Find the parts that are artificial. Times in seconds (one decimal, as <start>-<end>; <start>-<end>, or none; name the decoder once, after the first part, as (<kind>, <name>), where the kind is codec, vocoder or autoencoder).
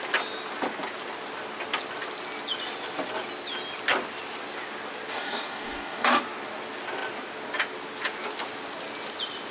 5.1-6.2 (codec, DAC)